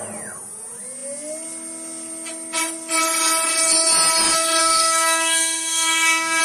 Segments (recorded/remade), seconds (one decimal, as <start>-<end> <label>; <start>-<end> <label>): 0.0-4.6 recorded; 4.6-6.4 remade